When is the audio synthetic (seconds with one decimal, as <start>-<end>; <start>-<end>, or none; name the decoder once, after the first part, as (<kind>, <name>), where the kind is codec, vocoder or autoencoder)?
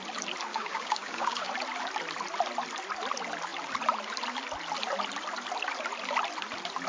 0.5-1.5 (codec, DAC)